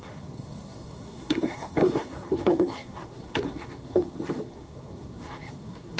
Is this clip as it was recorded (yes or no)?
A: no